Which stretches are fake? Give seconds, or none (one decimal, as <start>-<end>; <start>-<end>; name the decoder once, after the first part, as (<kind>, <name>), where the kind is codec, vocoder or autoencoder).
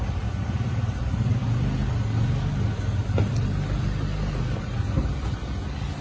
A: none